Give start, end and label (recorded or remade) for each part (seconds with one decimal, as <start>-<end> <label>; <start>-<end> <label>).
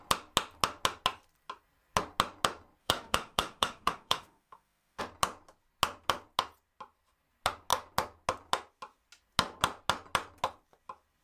0.0-2.8 recorded; 2.8-5.0 remade; 5.0-11.2 recorded